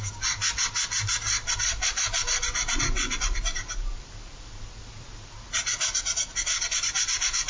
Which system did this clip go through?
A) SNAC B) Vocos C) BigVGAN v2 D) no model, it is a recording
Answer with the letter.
D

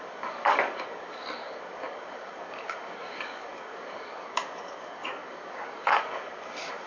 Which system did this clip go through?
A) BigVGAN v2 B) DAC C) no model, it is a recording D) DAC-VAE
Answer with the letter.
B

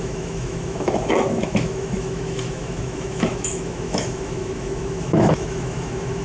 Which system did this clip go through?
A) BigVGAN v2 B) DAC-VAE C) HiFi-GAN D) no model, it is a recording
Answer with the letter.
B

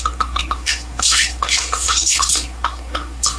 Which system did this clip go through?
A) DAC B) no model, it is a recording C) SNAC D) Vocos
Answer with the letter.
C